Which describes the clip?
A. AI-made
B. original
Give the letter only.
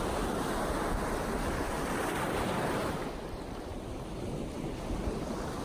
B